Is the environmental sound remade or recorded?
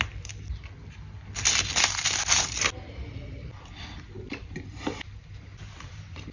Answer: recorded